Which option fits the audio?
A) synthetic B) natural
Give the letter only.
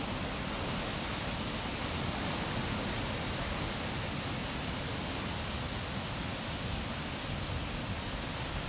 B